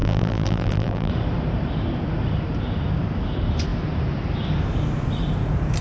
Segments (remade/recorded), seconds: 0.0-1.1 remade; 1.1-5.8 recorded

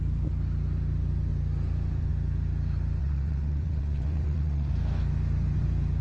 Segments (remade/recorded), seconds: 0.0-3.0 recorded; 3.0-4.7 remade; 4.7-6.0 recorded

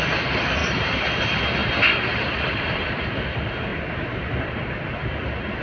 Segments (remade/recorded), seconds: 0.0-0.6 recorded; 0.6-1.2 remade; 1.2-1.6 recorded; 1.6-3.0 remade; 3.0-3.7 recorded; 3.7-4.7 remade; 4.7-5.6 recorded

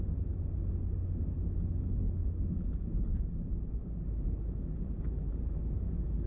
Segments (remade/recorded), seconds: 0.0-3.1 recorded; 3.1-6.3 remade

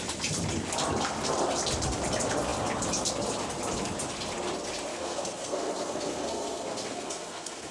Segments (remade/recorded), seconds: 0.0-4.9 recorded; 4.9-7.7 remade